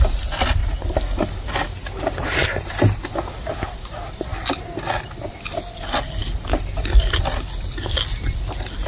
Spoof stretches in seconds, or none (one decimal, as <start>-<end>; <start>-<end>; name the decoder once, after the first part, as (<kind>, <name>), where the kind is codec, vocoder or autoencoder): none